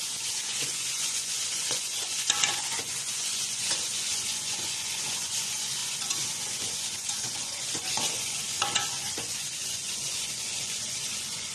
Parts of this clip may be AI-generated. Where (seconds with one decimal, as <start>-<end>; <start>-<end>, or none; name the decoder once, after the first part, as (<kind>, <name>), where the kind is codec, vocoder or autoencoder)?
0.0-11.5 (vocoder, Vocos)